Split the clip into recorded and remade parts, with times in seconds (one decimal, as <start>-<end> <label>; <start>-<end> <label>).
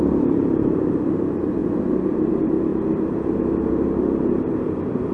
0.0-5.1 recorded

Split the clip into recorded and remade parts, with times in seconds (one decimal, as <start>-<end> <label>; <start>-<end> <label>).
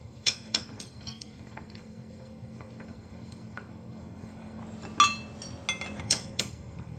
0.0-4.6 remade; 4.6-6.0 recorded; 6.0-7.0 remade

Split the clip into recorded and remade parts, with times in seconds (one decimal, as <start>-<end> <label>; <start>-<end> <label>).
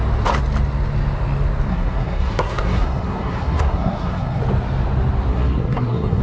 0.0-1.7 recorded; 1.7-4.4 remade; 4.4-5.3 recorded; 5.3-6.2 remade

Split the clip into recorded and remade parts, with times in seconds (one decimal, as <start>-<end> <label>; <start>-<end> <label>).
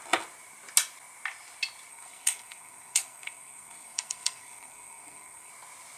0.0-1.9 recorded; 1.9-5.5 remade; 5.5-6.0 recorded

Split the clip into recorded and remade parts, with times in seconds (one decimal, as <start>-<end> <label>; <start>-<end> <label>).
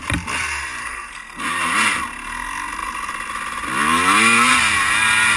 0.0-0.8 recorded; 0.8-1.4 remade; 1.4-5.4 recorded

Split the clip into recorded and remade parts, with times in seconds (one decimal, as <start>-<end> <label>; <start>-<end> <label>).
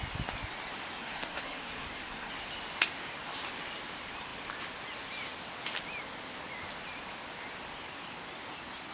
0.0-1.0 recorded; 1.0-2.3 remade; 2.3-8.9 recorded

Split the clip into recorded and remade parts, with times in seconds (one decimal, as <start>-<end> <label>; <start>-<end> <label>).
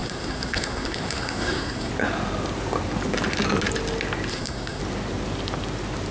0.0-1.9 remade; 1.9-4.3 recorded; 4.3-4.8 remade; 4.8-6.1 recorded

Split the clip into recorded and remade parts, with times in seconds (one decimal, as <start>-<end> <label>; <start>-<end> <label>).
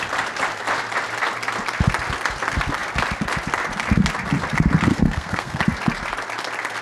0.0-4.9 recorded; 4.9-5.6 remade; 5.6-6.8 recorded